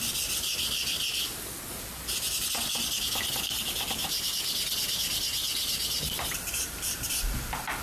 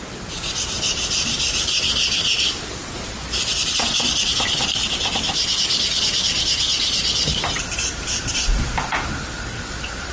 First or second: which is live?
first